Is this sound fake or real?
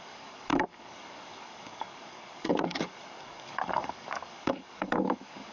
fake